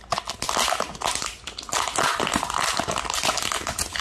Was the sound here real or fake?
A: real